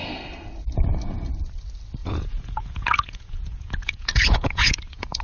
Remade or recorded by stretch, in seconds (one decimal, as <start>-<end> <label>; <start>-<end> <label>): 0.0-2.0 recorded; 2.0-5.2 remade

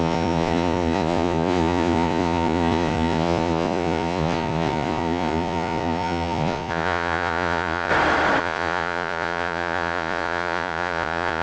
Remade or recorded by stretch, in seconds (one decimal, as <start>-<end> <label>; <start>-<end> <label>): 0.0-7.9 remade; 7.9-8.4 recorded; 8.4-11.4 remade

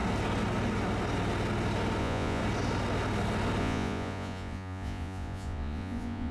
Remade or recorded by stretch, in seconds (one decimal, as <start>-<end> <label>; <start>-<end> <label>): 0.0-2.0 recorded; 2.0-2.4 remade; 2.4-3.6 recorded; 3.6-6.3 remade